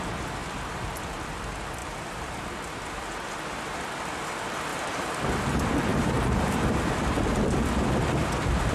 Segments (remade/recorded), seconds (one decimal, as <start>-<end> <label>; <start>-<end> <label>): 0.0-5.9 recorded; 5.9-7.4 remade; 7.4-8.7 recorded